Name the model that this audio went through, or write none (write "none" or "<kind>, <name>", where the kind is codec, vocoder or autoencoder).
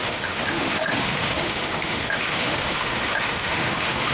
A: autoencoder, DAC-VAE